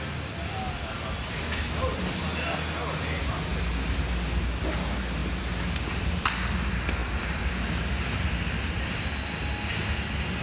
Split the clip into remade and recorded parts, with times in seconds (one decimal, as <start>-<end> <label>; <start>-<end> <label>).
0.0-5.2 recorded; 5.2-6.3 remade; 6.3-7.0 recorded; 7.0-8.7 remade; 8.7-10.4 recorded